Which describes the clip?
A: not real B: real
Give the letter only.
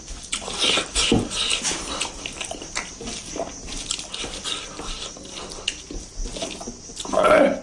B